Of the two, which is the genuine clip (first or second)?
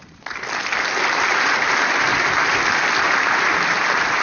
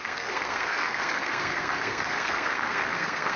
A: first